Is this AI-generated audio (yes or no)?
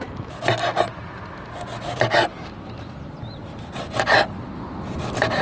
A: no